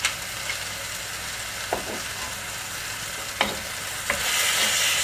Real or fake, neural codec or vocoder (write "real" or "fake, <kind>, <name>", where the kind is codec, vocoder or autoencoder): real